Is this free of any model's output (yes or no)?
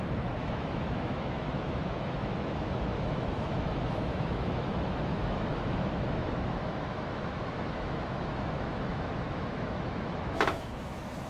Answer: no